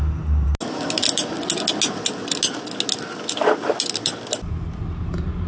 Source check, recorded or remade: recorded